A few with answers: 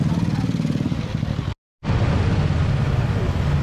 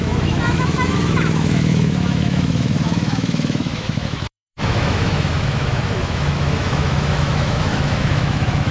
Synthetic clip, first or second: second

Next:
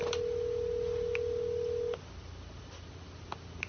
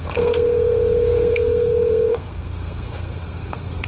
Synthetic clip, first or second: second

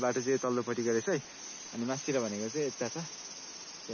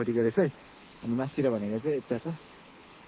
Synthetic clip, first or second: second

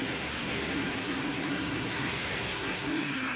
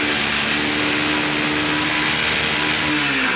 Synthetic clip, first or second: first